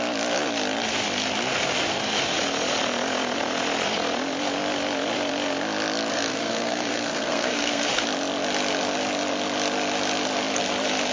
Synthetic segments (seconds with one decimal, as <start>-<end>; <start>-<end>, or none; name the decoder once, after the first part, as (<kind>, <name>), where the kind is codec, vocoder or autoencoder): 6.1-7.9 (codec, SNAC)